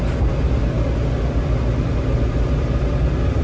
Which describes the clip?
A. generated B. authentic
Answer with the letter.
B